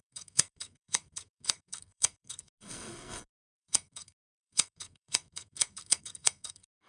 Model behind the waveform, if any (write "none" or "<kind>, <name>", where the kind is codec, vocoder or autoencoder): codec, SNAC